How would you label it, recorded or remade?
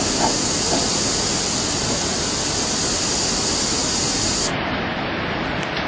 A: recorded